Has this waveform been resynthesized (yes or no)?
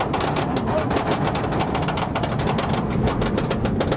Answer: no